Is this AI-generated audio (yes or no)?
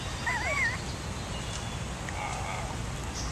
no